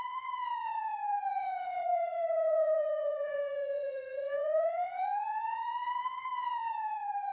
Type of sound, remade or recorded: remade